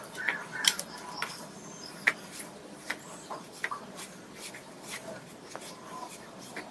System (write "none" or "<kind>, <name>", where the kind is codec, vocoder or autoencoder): vocoder, BigVGAN v2